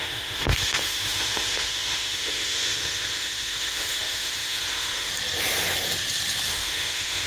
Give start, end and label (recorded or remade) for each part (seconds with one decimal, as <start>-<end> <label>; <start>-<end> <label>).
0.0-5.1 remade; 5.1-6.5 recorded; 6.5-7.3 remade